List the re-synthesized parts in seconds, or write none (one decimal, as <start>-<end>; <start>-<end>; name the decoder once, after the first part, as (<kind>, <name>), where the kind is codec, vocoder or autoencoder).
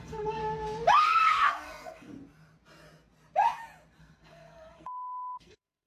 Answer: 0.0-0.4 (codec, SNAC); 1.0-2.1; 4.0-5.9